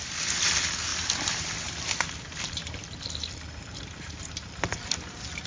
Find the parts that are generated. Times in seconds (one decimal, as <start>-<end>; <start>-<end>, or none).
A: none